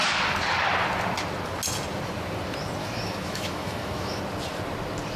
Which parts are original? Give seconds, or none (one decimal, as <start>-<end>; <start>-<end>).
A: 0.0-2.8; 4.2-5.2